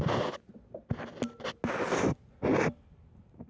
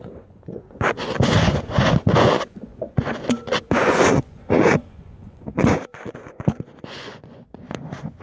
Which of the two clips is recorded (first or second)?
first